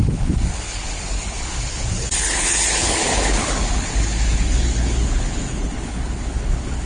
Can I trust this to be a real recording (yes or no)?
no